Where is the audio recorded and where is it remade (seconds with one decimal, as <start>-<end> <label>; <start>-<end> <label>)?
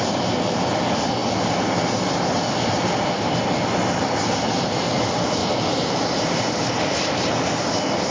0.0-5.4 recorded; 5.4-7.3 remade; 7.3-8.1 recorded